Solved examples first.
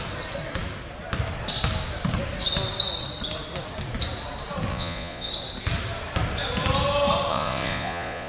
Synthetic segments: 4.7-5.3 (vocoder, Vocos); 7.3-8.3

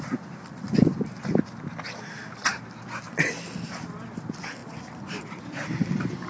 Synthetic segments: none

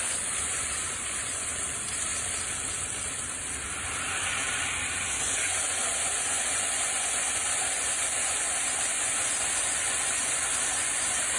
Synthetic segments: 0.0-2.1 (vocoder, Vocos); 5.2-11.4

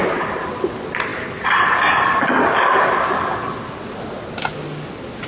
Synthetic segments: none

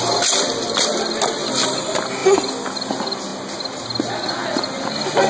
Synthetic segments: none